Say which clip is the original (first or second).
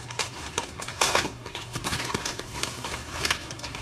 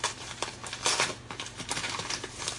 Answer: second